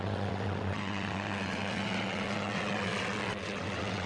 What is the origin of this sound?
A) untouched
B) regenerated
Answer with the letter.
B